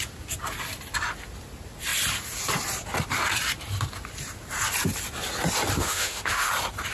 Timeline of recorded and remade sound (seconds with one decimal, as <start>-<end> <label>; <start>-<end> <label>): 0.0-5.8 recorded; 5.8-6.5 remade; 6.5-6.9 recorded